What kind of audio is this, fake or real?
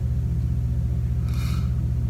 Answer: real